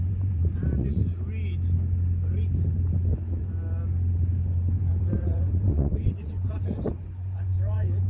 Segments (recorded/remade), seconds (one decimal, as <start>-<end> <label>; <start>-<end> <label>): 0.0-1.0 remade; 1.0-5.0 recorded; 5.0-8.1 remade